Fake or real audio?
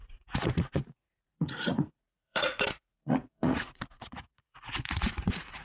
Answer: fake